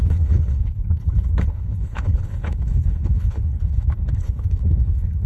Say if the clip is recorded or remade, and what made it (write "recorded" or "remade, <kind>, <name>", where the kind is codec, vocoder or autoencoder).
remade, codec, HILCodec